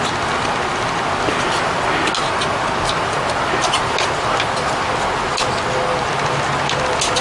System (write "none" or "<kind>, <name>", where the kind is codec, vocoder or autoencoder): none